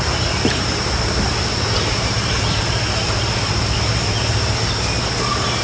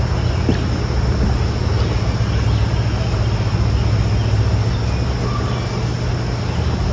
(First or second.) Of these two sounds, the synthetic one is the first